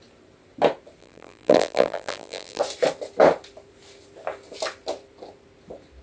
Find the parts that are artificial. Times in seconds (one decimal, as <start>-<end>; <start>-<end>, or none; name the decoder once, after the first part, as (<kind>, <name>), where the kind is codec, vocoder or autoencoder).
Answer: 1.0-2.6 (vocoder, BigVGAN v2)